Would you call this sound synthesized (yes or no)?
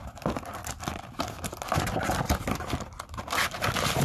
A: no